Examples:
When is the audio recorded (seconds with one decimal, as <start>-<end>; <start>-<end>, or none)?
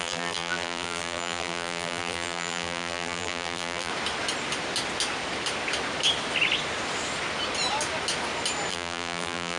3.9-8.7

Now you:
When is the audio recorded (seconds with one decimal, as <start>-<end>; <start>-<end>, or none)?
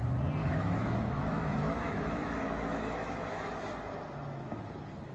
0.0-0.4; 3.5-5.1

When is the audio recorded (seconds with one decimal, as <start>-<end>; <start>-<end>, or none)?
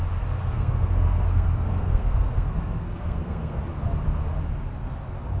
0.0-0.4; 3.6-5.4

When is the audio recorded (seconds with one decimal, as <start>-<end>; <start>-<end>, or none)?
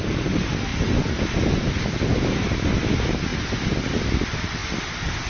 0.0-5.3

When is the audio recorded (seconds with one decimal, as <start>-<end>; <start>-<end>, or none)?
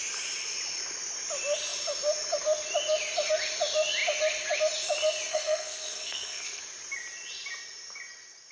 0.0-5.3; 6.6-8.5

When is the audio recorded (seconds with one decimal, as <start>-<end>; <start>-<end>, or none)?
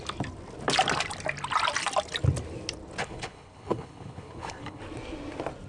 0.0-3.0; 4.8-5.7